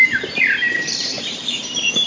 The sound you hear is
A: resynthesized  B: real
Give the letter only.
A